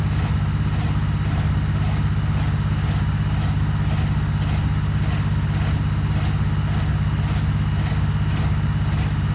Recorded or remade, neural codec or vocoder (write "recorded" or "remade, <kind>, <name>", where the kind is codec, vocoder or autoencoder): recorded